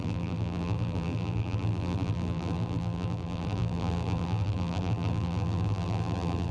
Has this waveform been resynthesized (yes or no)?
yes